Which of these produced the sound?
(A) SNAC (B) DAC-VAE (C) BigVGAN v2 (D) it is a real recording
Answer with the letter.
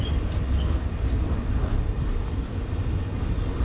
D